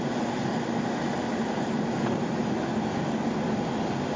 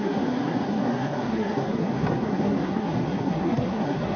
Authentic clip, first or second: first